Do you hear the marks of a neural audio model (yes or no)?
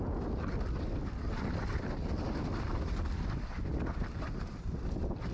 no